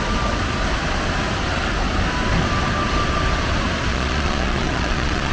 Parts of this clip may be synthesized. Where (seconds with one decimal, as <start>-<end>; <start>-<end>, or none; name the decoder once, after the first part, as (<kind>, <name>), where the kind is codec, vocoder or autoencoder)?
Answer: 3.9-5.3 (vocoder, Vocos)